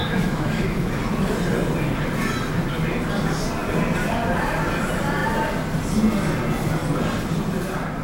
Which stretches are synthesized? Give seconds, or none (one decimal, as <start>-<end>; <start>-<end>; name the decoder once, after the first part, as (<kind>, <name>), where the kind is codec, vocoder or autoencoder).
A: 0.0-1.0 (autoencoder, DAC-VAE)